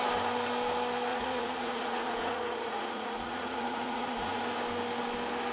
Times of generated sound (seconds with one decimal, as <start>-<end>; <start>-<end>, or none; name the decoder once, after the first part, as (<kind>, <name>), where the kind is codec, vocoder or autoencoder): 1.1-4.4 (vocoder, Vocos)